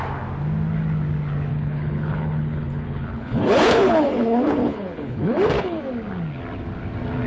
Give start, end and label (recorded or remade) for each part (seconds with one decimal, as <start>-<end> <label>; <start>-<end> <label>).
0.0-1.5 recorded; 1.5-5.8 remade; 5.8-7.3 recorded